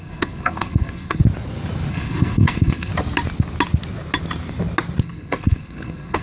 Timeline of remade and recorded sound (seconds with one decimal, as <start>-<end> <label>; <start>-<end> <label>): 0.0-1.2 remade; 1.2-1.9 recorded; 1.9-2.9 remade; 2.9-5.0 recorded; 5.0-6.2 remade